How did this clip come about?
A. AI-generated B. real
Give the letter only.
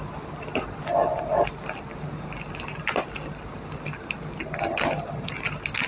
B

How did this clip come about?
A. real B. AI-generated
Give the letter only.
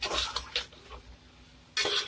A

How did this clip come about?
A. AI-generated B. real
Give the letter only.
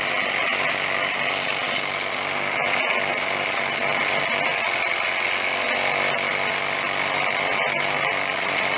B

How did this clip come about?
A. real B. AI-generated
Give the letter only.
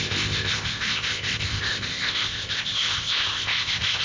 B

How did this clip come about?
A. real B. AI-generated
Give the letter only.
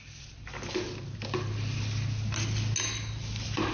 A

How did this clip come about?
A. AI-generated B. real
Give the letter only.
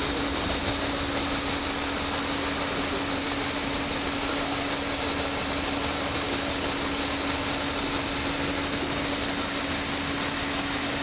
B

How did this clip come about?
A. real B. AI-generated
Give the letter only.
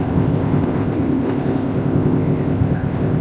B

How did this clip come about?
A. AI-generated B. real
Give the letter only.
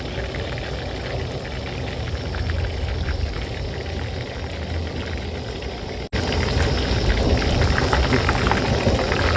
B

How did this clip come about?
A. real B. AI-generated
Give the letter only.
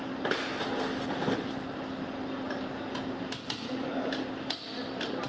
A